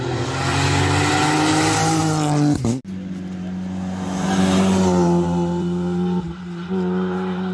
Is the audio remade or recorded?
recorded